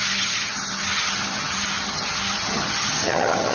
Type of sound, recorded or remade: remade